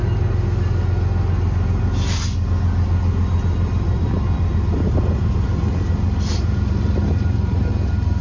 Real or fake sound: real